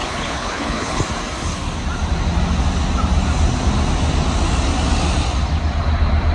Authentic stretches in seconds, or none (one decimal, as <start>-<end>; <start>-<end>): 1.0-6.3